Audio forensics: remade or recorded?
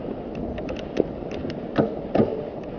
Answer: recorded